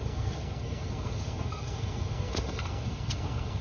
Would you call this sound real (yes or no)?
no